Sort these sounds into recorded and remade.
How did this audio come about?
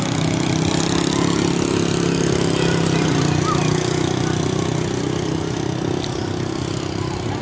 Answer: recorded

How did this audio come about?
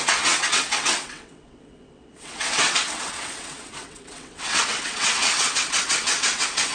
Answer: remade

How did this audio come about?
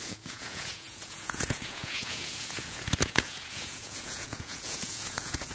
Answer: remade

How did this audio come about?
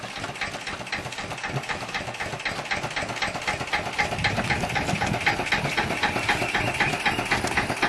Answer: recorded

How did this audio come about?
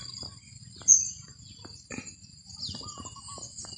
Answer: recorded